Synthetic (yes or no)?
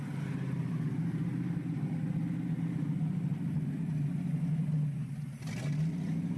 no